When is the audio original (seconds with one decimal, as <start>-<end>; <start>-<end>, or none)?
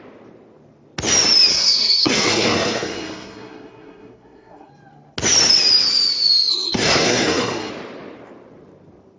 0.0-1.5; 4.7-6.5; 7.7-9.2